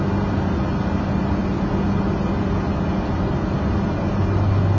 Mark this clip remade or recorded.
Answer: recorded